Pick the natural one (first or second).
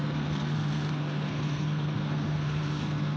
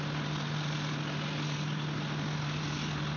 second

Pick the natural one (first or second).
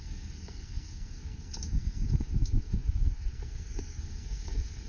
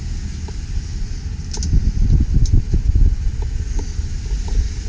second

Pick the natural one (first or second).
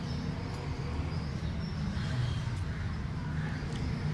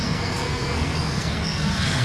first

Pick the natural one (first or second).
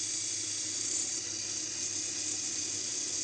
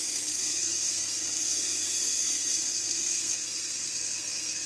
first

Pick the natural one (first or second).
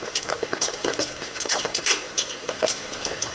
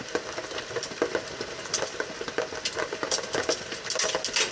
second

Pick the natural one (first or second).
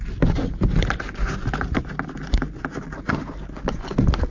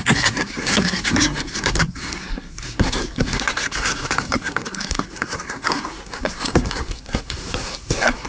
first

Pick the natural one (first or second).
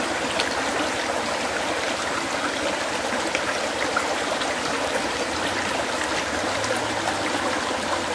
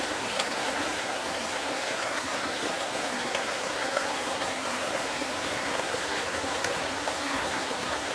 first